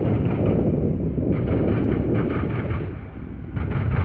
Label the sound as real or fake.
real